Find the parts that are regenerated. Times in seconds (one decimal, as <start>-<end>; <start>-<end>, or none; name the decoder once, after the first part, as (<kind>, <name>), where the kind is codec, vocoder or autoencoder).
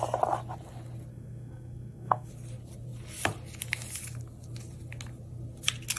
1.1-2.3 (codec, SNAC)